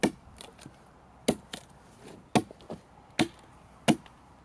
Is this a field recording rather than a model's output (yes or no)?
yes